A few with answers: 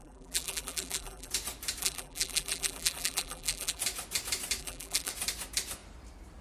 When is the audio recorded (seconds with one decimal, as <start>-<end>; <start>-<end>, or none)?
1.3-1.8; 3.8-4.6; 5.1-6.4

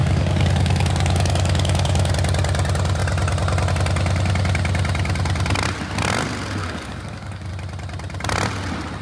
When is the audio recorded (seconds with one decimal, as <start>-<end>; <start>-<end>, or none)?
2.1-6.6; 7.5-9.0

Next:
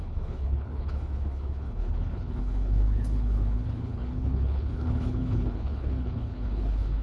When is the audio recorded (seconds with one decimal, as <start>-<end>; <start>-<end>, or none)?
none